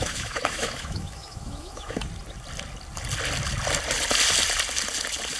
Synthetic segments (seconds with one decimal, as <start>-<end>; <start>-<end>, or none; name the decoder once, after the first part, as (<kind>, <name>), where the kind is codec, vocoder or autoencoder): 0.0-2.0 (autoencoder, DAC-VAE)